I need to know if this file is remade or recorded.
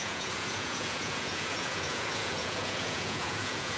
remade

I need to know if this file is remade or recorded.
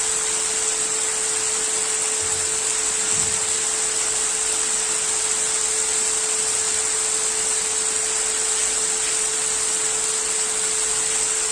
recorded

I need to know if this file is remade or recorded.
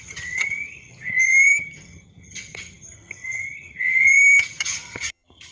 remade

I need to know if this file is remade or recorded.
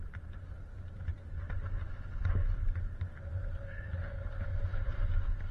recorded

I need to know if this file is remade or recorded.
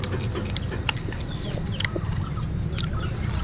recorded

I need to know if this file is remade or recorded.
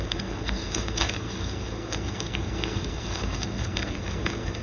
remade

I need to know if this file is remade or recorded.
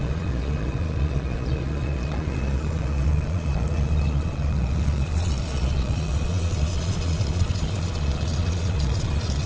remade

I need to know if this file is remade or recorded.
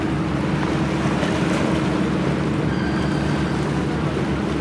recorded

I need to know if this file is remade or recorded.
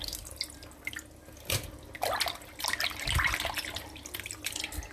recorded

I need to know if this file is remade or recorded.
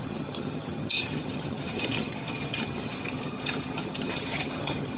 remade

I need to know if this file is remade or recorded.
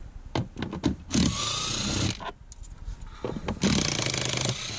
recorded